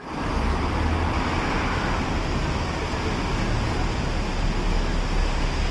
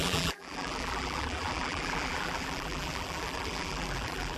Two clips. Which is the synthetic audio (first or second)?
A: second